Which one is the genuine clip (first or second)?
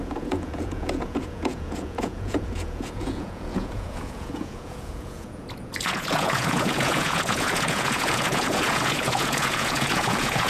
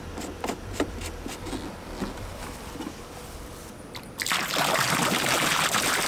second